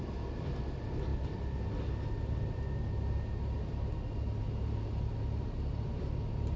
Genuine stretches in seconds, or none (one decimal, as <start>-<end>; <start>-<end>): 0.0-6.6